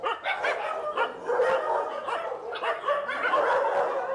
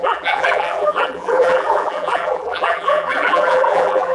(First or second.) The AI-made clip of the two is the second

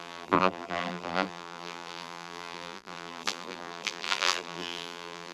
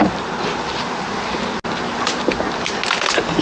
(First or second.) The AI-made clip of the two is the first